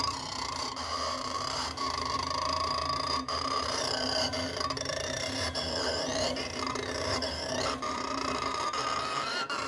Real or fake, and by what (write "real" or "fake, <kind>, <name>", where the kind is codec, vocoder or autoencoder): fake, vocoder, BigVGAN v2